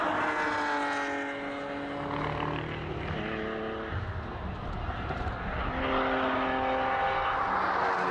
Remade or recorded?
recorded